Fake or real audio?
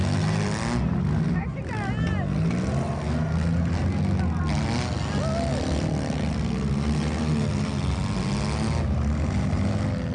real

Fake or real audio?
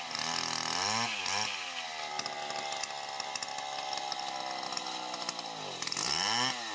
real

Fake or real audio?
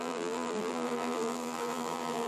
fake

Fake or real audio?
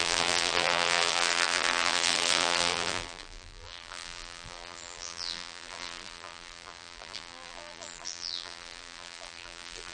fake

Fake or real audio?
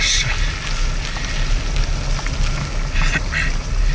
real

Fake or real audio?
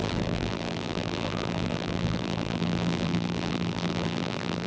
fake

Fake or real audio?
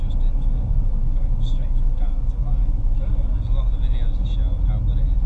real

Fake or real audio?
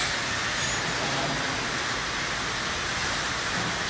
real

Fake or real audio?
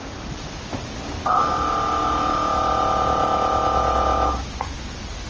real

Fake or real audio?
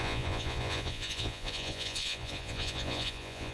fake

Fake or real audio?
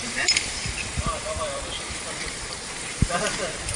fake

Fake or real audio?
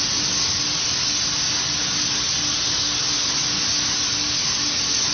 real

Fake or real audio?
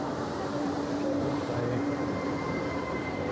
fake